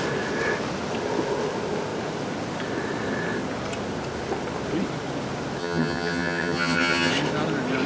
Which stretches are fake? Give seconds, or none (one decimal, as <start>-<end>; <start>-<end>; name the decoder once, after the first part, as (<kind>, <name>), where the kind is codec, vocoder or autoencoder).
5.6-7.1 (vocoder, HiFi-GAN)